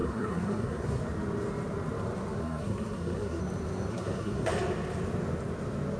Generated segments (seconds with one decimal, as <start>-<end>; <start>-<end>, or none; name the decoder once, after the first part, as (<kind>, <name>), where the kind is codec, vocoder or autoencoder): 0.0-1.0 (codec, SNAC); 2.4-3.4; 3.9-4.5